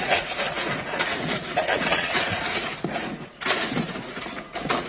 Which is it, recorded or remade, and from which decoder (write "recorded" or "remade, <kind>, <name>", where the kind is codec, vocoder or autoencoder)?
remade, vocoder, Vocos